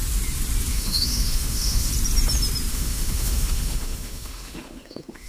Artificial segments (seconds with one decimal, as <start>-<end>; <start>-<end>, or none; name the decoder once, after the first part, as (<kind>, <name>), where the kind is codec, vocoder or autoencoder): 0.7-1.9 (autoencoder, DAC-VAE); 2.7-5.3